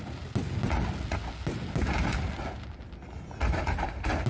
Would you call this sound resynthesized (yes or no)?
no